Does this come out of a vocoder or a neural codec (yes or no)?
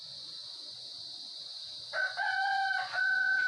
yes